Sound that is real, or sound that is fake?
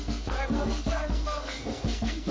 fake